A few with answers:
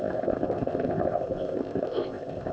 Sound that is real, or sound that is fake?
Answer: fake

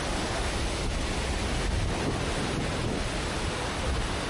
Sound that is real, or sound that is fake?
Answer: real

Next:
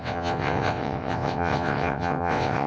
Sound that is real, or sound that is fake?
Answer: fake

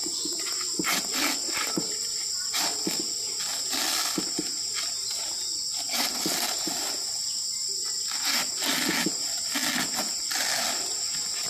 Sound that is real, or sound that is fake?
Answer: real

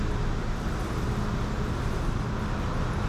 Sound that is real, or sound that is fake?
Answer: real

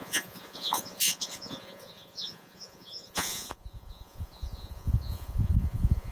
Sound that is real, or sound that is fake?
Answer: fake